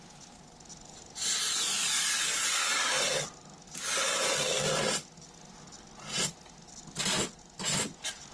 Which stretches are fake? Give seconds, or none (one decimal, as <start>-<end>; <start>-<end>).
none